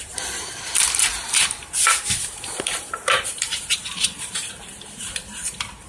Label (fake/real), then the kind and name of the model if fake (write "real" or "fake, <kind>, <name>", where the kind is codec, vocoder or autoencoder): fake, vocoder, BigVGAN v2